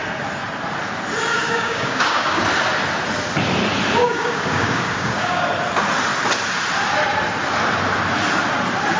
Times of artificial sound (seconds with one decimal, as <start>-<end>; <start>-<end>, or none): 1.3-2.4; 4.0-5.4